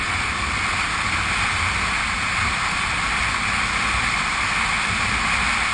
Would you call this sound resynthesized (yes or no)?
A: no